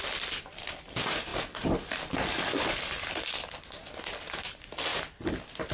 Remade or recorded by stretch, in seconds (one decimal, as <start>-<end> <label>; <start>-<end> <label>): 0.0-1.3 remade; 1.3-4.2 recorded; 4.2-4.9 remade; 4.9-5.7 recorded